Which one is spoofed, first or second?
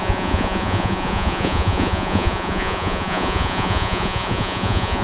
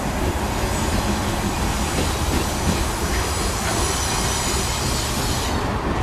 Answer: first